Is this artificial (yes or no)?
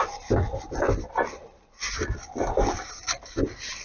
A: no